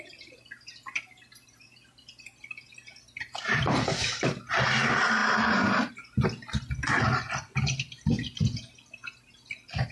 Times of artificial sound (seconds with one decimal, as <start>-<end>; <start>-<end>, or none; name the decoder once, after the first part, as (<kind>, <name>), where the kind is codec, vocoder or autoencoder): none